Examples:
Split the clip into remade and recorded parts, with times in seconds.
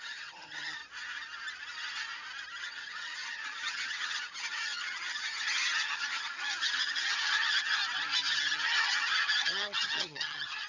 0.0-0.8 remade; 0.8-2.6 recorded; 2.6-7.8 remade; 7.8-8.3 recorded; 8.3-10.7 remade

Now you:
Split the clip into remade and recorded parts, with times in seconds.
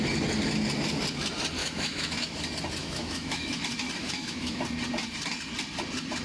0.0-1.6 recorded; 1.6-2.4 remade; 2.4-2.8 recorded; 2.8-3.6 remade; 3.6-4.0 recorded; 4.0-4.6 remade; 4.6-6.2 recorded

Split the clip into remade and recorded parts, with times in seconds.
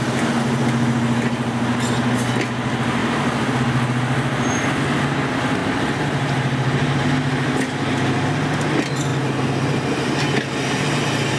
0.0-3.0 recorded; 3.0-3.6 remade; 3.6-5.6 recorded; 5.6-7.0 remade; 7.0-11.4 recorded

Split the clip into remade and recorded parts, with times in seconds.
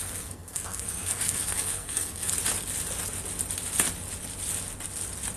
0.0-2.3 remade; 2.3-5.4 recorded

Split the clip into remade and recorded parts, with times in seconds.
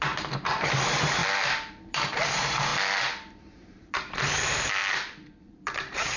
0.0-1.2 remade; 1.2-1.7 recorded; 1.7-2.7 remade; 2.7-3.3 recorded; 3.3-4.8 remade; 4.8-5.4 recorded; 5.4-6.2 remade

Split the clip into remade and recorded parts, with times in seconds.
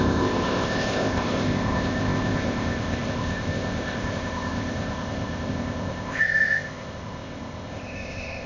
0.0-8.5 remade